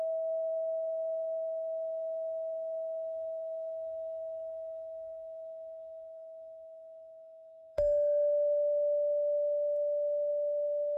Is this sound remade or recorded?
remade